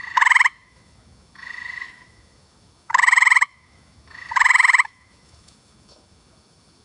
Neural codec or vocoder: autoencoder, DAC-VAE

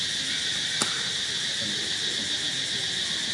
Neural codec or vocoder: none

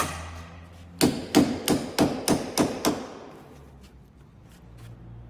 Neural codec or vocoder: none